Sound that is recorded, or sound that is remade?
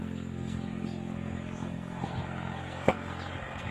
remade